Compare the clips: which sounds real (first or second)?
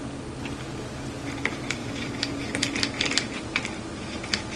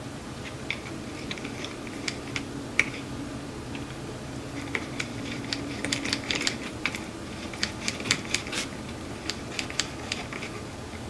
first